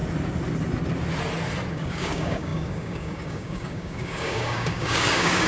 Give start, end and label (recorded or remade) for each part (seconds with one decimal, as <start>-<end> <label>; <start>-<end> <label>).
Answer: 0.0-1.7 recorded; 1.7-5.5 remade